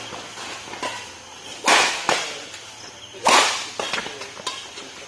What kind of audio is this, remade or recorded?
recorded